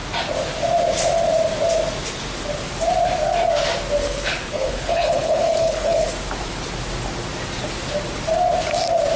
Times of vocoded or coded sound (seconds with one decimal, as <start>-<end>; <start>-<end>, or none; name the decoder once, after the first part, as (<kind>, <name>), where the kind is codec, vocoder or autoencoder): 4.0-6.1 (codec, HILCodec)